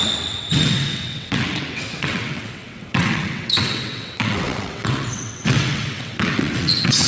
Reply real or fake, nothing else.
fake